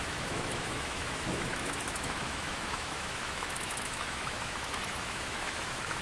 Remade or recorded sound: remade